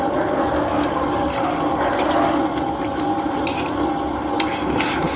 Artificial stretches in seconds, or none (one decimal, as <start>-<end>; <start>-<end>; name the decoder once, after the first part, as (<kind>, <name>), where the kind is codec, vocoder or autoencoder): 0.7-1.7 (vocoder, BigVGAN v2); 2.9-3.9